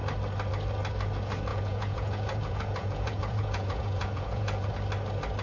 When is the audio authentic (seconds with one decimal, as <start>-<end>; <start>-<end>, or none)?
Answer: 0.0-1.5; 4.7-5.4